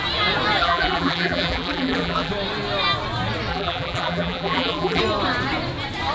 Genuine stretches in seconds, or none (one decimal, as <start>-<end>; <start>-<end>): 0.0-0.6; 2.3-3.5; 5.0-6.1